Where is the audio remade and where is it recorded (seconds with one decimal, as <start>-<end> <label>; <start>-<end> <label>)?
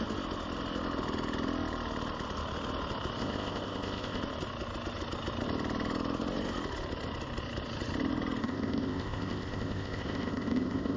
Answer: 0.0-3.2 recorded; 3.2-4.2 remade; 4.2-8.4 recorded; 8.4-11.0 remade